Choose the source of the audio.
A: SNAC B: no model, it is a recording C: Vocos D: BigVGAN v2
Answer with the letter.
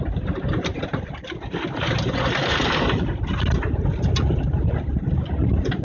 B